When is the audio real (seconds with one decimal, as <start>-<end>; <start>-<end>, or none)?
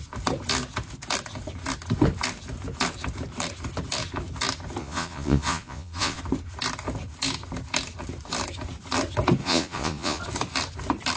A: 0.0-4.8; 6.2-9.4; 10.2-11.2